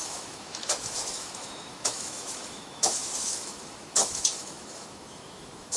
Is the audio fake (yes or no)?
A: yes